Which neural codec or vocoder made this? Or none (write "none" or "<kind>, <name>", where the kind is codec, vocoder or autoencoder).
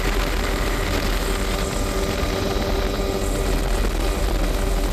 none